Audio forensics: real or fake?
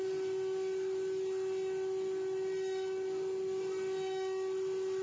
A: real